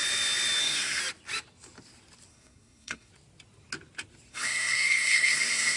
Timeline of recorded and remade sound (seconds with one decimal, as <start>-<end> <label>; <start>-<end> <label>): 0.0-0.6 recorded; 0.6-1.0 remade; 1.0-2.3 recorded; 2.3-3.1 remade; 3.1-4.3 recorded; 4.3-5.8 remade